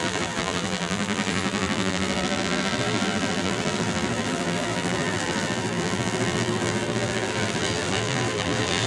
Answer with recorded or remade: remade